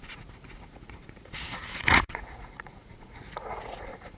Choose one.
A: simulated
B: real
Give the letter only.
A